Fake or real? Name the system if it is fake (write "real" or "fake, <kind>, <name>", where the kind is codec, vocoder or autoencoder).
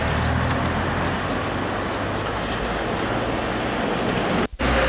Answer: real